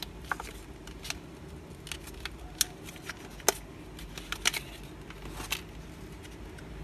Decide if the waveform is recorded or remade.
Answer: recorded